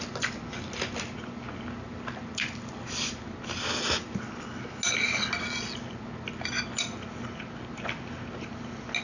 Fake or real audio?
real